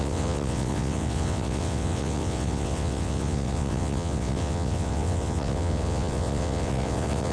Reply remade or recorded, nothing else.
remade